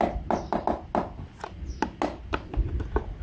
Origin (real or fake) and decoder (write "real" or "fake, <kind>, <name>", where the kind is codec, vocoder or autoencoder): real